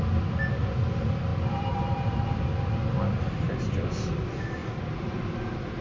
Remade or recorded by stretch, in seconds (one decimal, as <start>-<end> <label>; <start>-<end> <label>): 0.0-1.3 recorded; 1.3-2.4 remade; 2.4-4.6 recorded; 4.6-5.8 remade